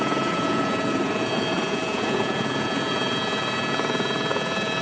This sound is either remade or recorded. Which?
remade